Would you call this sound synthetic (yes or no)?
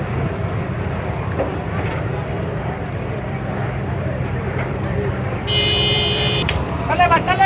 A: yes